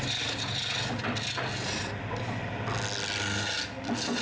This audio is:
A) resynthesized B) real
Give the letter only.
B